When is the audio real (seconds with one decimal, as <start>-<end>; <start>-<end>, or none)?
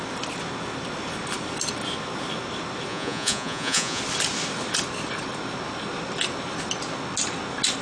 0.0-2.9; 4.0-7.8